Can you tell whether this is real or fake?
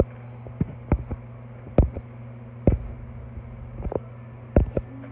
real